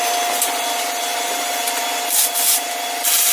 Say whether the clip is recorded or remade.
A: recorded